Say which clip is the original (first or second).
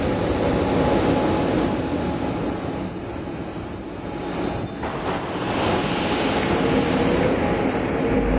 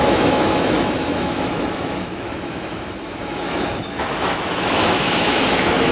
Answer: first